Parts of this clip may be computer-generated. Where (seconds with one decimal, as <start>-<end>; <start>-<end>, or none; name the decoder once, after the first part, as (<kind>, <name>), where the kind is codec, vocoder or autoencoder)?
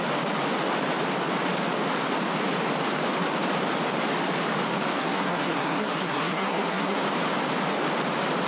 5.0-7.0 (codec, SNAC)